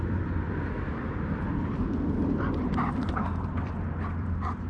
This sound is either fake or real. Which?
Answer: fake